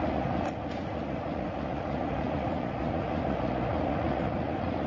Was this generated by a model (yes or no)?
yes